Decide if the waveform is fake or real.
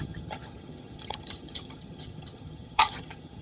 fake